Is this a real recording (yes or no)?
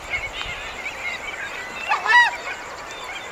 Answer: yes